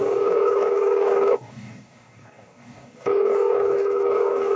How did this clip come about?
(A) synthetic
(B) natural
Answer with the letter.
A